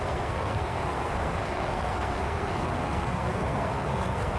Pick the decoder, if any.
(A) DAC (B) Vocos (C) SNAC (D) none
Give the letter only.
C